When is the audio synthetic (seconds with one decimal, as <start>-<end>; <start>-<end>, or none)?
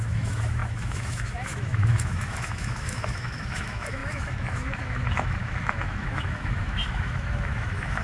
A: 0.0-8.0